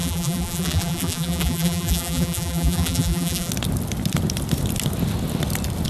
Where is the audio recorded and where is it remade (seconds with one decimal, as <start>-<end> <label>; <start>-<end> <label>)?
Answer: 0.0-3.5 remade; 3.5-5.9 recorded